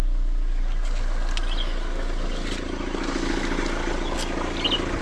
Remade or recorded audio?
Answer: recorded